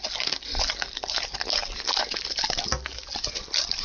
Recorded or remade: recorded